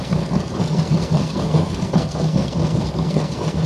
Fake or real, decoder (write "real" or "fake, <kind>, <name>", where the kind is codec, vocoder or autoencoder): fake, codec, SNAC